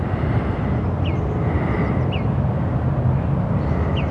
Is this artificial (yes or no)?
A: no